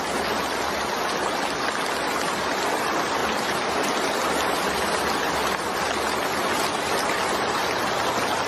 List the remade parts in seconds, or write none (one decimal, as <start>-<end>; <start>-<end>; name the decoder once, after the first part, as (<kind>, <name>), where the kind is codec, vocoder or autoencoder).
3.2-5.1 (vocoder, BigVGAN v2)